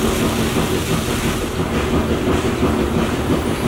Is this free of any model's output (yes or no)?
yes